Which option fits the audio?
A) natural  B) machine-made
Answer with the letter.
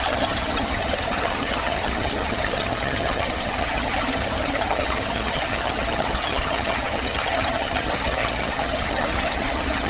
B